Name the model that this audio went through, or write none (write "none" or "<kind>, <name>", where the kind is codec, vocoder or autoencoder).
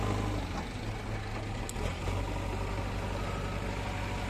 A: none